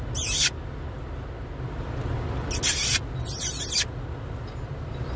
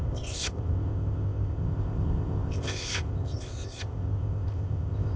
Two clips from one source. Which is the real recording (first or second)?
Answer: first